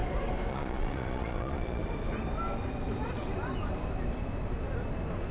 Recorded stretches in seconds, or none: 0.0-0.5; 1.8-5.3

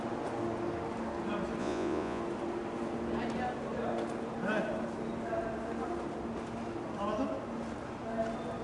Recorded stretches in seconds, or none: 0.0-1.6; 2.2-8.6

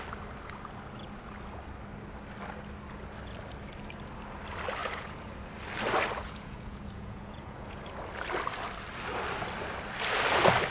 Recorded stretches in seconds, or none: 0.0-4.8; 5.3-6.2; 7.8-10.7

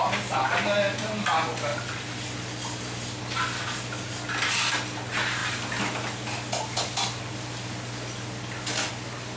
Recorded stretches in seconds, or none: 0.0-9.4

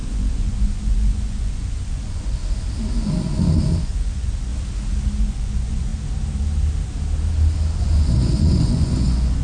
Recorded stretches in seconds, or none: 2.4-3.8; 4.5-5.2; 5.9-7.8

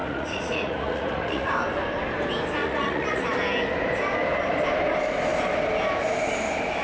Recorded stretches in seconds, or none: 1.5-2.6; 3.2-6.8

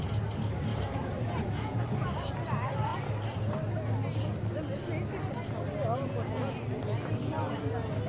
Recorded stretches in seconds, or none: 0.0-0.7; 2.3-8.1

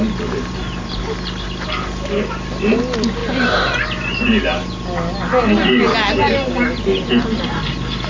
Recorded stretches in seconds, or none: 0.0-8.1